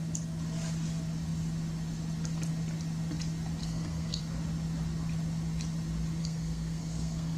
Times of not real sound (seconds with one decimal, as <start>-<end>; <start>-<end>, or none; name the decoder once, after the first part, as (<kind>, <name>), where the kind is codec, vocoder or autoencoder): 3.6-4.2 (codec, SNAC); 6.2-7.4